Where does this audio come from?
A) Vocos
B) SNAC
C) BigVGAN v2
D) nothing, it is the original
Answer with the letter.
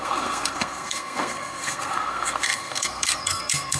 B